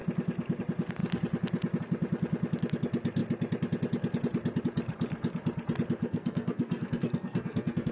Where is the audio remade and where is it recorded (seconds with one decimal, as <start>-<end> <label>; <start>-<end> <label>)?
0.0-6.0 recorded; 6.0-7.9 remade